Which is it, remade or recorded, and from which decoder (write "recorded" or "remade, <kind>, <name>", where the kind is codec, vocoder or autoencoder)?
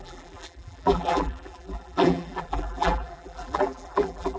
remade, vocoder, BigVGAN v2